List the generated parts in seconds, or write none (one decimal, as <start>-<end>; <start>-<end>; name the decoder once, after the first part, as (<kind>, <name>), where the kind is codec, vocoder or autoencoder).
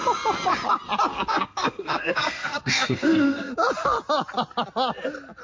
1.1-3.5 (codec, SNAC)